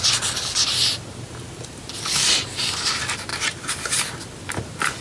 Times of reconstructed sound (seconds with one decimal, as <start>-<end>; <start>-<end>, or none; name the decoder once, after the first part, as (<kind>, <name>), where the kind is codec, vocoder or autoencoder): none